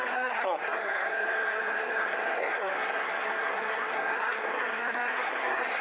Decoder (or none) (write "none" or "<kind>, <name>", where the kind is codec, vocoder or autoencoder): codec, SNAC